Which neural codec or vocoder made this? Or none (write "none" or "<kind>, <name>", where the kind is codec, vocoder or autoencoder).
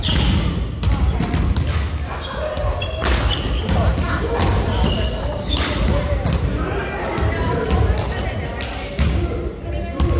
none